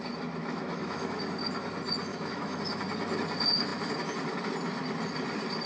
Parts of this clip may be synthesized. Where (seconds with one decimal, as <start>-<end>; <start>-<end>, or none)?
0.4-1.2; 2.1-2.8